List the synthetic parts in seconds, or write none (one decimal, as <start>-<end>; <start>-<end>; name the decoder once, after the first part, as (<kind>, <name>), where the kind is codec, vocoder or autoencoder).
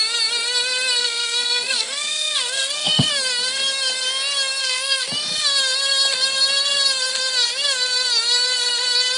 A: 1.0-3.1 (codec, SNAC); 4.6-5.1